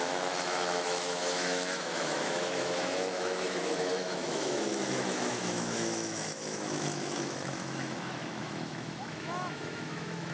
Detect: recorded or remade remade